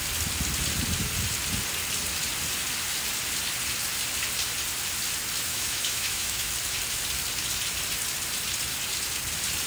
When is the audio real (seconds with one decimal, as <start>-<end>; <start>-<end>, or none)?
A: 0.0-5.5; 6.5-9.7